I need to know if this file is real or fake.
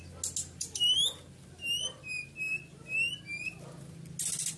real